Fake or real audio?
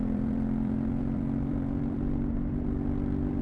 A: fake